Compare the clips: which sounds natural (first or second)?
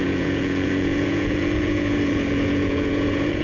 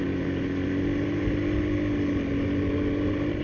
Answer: second